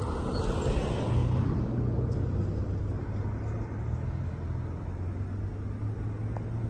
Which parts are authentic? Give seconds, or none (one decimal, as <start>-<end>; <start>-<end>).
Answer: 0.0-6.7